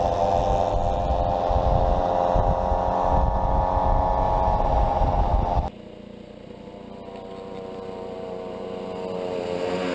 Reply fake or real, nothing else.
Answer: real